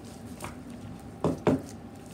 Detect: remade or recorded recorded